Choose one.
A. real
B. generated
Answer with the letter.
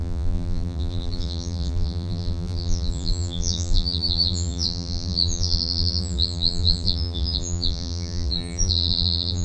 B